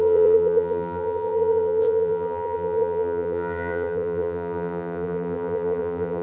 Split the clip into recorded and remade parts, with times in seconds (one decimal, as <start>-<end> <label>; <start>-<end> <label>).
0.0-6.2 remade